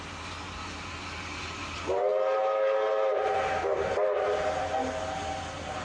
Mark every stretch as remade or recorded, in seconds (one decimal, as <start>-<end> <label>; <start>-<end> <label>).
0.0-5.8 recorded